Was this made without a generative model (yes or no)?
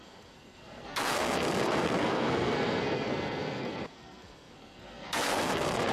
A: no